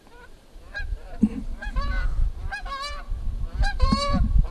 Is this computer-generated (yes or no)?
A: yes